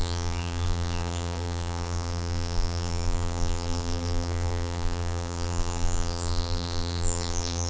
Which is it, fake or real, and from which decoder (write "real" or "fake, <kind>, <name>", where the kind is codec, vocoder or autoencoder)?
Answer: fake, vocoder, BigVGAN v2